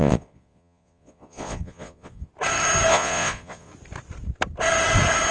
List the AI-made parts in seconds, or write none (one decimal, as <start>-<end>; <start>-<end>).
0.0-2.3; 2.9-3.7